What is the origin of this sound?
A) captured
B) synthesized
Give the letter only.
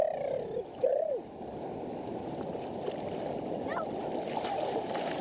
A